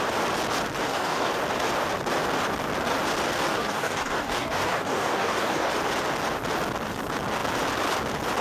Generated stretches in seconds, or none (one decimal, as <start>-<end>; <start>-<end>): 0.8-1.3; 3.5-5.7